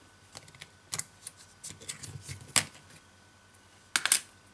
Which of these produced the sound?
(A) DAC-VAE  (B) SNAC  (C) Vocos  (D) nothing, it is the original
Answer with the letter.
D